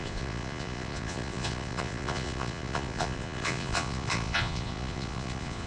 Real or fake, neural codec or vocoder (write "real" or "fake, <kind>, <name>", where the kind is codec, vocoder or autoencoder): fake, vocoder, Vocos